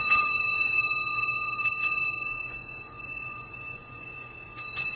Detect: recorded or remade remade